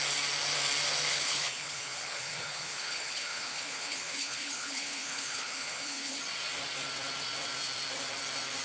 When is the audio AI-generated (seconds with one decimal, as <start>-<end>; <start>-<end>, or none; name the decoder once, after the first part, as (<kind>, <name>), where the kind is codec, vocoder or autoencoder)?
1.1-6.1 (codec, HILCodec)